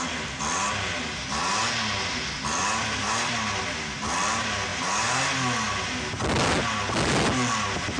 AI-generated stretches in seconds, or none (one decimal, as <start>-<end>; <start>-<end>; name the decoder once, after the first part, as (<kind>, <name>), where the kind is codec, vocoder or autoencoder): none